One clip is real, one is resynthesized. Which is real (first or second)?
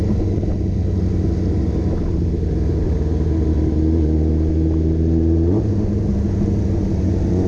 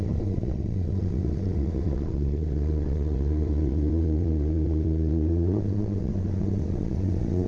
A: first